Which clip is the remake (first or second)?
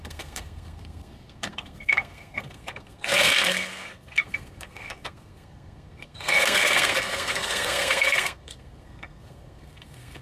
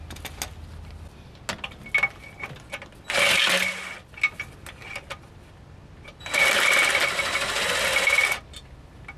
first